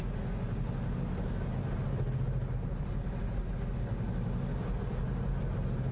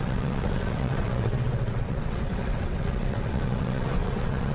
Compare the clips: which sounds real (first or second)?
first